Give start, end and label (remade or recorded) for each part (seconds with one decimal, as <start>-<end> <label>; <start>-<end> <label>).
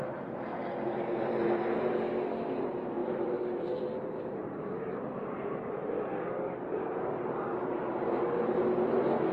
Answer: 0.0-0.5 recorded; 0.5-1.2 remade; 1.2-3.0 recorded; 3.0-7.9 remade; 7.9-9.3 recorded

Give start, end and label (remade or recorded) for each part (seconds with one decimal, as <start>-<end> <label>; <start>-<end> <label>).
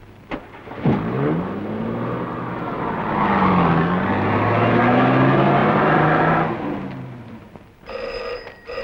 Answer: 0.0-5.6 recorded; 5.6-6.3 remade; 6.3-6.8 recorded; 6.8-7.4 remade; 7.4-8.8 recorded